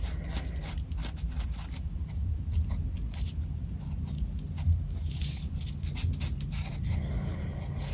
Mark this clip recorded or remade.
recorded